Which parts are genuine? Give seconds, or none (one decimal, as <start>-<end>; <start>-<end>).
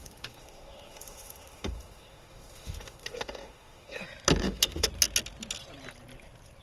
4.0-4.4; 4.9-6.6